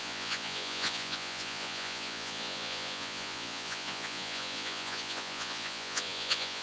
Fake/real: fake